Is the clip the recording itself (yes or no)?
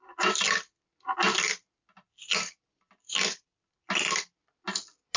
yes